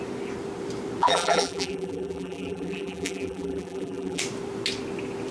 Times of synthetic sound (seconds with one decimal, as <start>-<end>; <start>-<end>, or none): 1.0-4.2